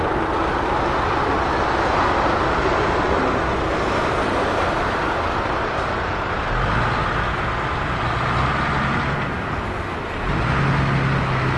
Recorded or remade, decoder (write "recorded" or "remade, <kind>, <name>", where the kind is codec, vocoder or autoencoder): recorded